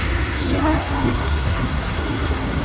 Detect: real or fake fake